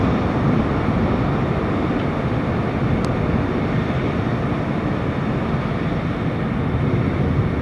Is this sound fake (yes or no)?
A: no